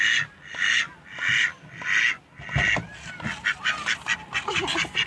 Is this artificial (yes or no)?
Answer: no